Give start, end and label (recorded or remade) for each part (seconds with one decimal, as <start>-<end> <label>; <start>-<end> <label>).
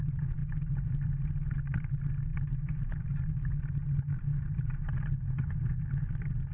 0.0-6.5 recorded